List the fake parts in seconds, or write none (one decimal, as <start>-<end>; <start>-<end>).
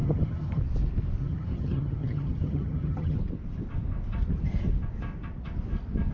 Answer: 0.0-0.6; 1.2-3.2